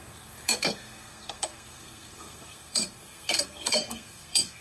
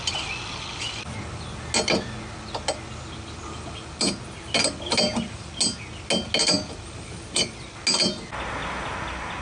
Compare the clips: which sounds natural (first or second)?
second